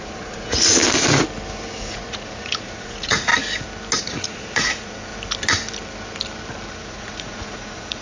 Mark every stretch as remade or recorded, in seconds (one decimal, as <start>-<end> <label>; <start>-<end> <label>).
0.0-0.8 remade; 0.8-1.8 recorded; 1.8-3.3 remade; 3.3-4.0 recorded; 4.0-5.1 remade; 5.1-6.7 recorded; 6.7-8.0 remade